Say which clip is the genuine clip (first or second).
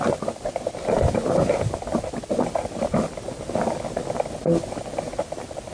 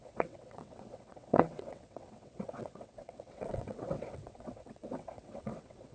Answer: first